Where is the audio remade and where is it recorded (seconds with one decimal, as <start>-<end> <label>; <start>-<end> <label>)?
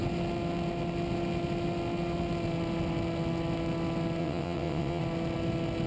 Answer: 0.0-4.2 recorded; 4.2-5.0 remade; 5.0-5.9 recorded